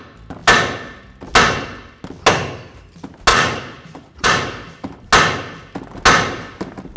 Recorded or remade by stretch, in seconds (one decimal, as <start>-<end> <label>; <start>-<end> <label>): 0.0-3.3 recorded; 3.3-4.3 remade; 4.3-7.0 recorded